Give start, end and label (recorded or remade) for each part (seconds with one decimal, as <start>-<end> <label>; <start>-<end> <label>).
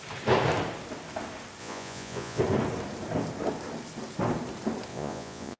0.0-1.6 recorded; 1.6-2.4 remade; 2.4-4.9 recorded; 4.9-5.6 remade